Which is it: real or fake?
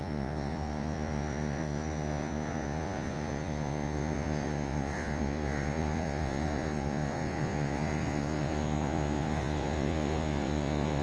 fake